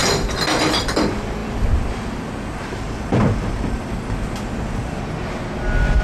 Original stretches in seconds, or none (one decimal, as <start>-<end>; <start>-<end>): 0.0-6.0